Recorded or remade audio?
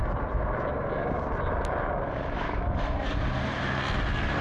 recorded